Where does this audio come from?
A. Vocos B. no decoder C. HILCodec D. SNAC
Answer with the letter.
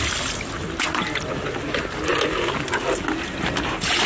B